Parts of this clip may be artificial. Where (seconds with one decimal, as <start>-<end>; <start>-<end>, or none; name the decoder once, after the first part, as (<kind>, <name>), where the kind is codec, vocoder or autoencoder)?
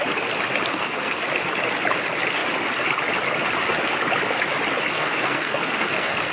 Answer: 0.7-1.2 (codec, SNAC); 4.9-6.3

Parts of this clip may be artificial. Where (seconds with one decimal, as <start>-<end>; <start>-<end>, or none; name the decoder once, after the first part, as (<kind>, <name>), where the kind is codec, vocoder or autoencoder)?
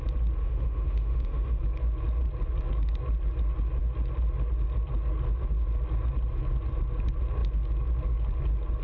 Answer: 0.4-1.6 (autoencoder, DAC-VAE)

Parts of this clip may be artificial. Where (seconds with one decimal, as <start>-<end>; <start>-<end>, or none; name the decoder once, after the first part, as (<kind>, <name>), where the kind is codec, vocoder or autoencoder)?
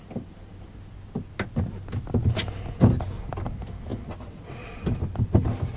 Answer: none